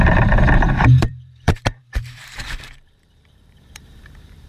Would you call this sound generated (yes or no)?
yes